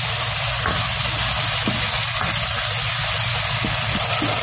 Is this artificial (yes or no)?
no